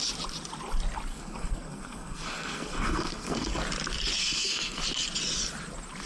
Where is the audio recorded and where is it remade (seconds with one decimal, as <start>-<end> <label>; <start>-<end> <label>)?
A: 0.0-1.1 recorded; 1.1-3.6 remade; 3.6-4.2 recorded; 4.2-4.8 remade; 4.8-6.1 recorded